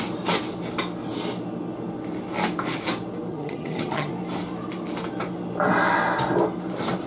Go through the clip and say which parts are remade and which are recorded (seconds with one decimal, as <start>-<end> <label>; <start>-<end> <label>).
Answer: 0.0-3.3 recorded; 3.3-4.1 remade; 4.1-7.1 recorded